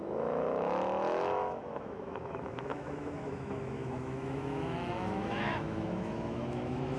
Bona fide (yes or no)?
no